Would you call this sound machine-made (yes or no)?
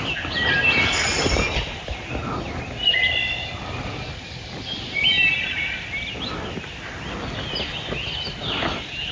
no